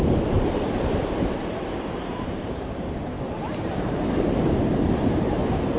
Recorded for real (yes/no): no